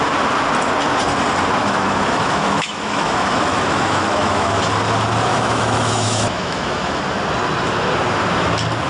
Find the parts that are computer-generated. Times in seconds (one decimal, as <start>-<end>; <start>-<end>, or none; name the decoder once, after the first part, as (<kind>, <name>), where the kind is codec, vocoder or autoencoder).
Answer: 1.6-4.6 (autoencoder, DAC-VAE); 5.3-7.0